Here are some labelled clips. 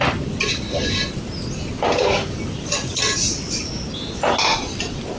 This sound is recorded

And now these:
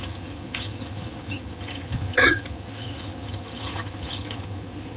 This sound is remade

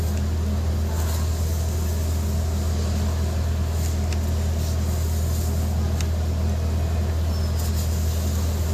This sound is recorded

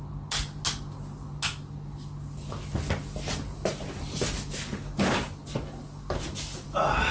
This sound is recorded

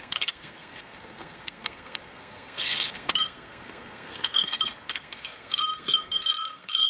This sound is remade